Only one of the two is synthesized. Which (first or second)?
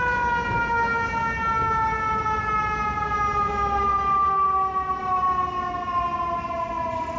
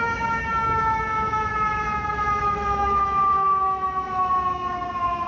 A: second